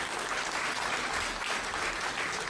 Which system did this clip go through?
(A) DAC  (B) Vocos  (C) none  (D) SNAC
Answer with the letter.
C